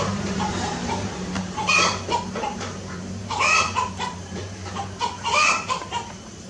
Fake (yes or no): yes